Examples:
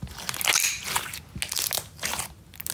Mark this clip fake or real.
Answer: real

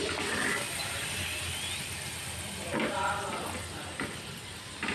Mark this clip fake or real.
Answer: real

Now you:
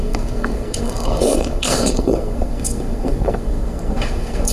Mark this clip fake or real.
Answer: fake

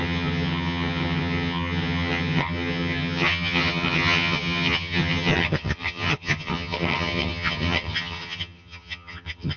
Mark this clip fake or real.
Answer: fake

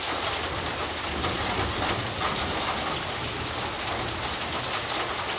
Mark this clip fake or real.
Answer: real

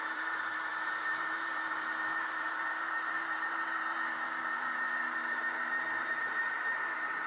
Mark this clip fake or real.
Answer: fake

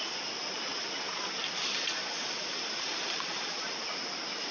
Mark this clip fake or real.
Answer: real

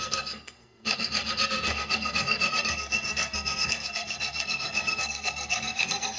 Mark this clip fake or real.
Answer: fake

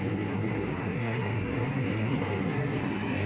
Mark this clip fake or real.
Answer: fake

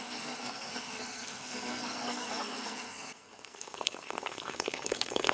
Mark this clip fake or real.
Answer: fake